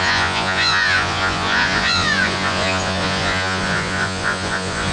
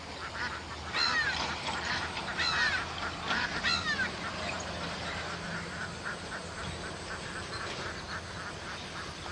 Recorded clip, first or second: second